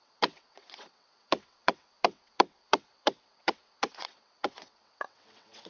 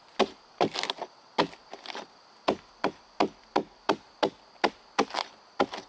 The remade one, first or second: first